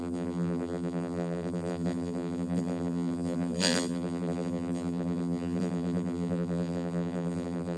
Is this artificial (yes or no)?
yes